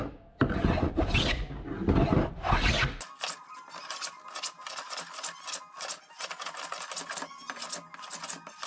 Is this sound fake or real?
real